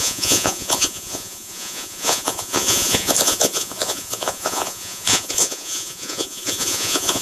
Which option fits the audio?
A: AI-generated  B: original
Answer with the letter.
A